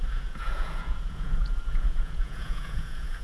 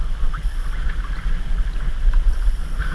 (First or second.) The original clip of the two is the second